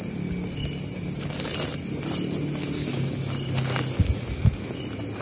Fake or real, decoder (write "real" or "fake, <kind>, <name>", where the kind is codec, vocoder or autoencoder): real